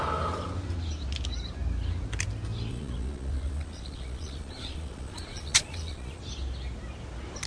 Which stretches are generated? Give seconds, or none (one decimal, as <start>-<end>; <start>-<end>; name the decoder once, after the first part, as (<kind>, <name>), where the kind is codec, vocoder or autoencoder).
2.7-6.2 (vocoder, Vocos)